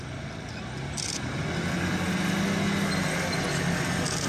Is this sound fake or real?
real